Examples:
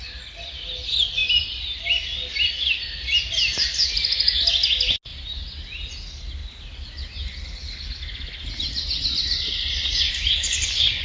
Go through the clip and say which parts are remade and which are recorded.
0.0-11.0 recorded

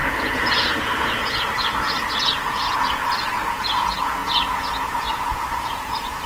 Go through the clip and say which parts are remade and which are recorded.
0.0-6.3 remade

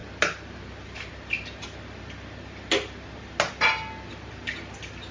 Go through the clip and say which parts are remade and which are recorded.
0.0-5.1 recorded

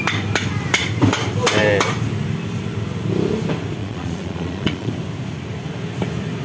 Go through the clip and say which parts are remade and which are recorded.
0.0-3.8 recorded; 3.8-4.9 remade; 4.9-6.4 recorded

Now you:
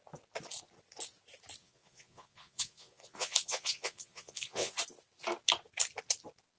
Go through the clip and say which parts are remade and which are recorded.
0.0-1.6 recorded; 1.6-4.8 remade; 4.8-6.6 recorded